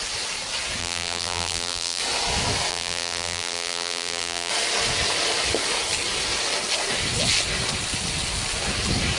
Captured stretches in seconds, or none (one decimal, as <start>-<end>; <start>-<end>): 0.0-0.8; 2.0-2.7; 4.5-9.2